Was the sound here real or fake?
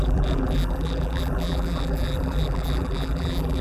fake